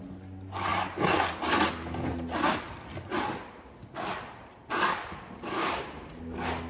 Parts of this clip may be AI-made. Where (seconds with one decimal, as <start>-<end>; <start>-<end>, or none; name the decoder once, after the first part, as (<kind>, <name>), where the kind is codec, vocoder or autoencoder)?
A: none